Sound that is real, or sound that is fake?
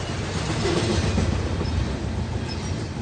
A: real